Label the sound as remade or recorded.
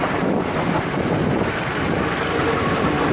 recorded